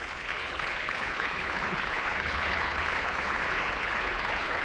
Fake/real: fake